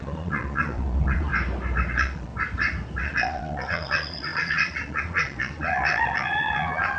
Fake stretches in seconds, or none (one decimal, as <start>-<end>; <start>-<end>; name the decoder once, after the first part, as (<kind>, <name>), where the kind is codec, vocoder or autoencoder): 0.0-1.3 (vocoder, Vocos); 1.9-2.3; 3.0-7.0